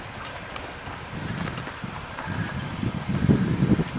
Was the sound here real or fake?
real